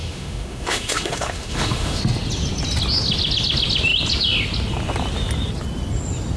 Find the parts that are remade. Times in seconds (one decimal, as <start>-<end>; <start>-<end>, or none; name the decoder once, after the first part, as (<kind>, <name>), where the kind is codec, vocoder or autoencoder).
0.0-2.0 (autoencoder, DAC-VAE)